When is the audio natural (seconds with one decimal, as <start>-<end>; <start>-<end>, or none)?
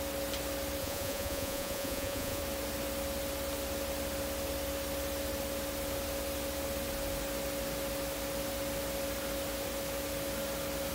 0.0-0.8; 2.4-10.9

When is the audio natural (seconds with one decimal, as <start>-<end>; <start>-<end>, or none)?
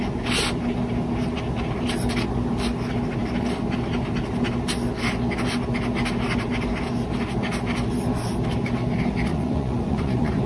0.0-9.3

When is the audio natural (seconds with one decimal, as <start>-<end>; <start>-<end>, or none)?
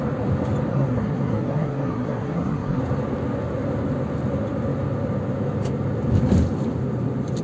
0.0-0.7; 2.8-7.4